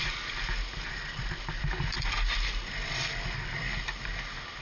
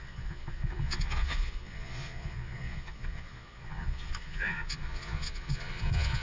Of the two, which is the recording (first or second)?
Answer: first